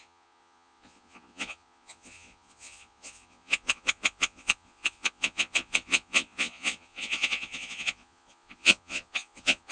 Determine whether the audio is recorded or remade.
remade